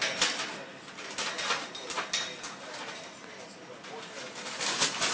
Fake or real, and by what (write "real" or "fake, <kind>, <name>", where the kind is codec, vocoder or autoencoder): real